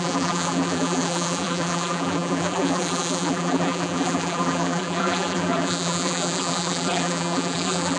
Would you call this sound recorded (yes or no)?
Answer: no